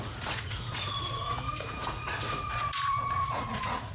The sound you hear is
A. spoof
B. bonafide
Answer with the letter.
A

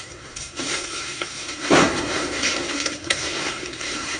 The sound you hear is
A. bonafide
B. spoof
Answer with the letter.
B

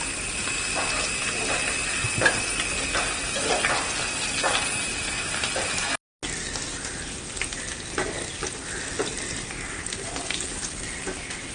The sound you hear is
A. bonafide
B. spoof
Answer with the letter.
A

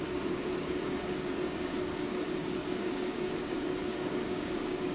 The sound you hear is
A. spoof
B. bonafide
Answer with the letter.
A